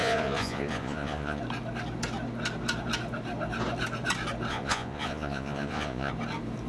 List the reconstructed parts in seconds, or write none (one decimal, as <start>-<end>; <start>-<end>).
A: 0.0-1.4; 4.5-6.1